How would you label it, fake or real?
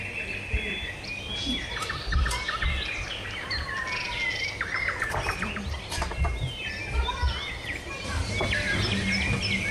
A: real